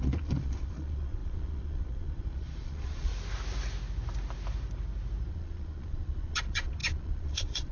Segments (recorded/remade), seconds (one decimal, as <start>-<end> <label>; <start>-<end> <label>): 0.0-3.1 remade; 3.1-5.3 recorded; 5.3-7.7 remade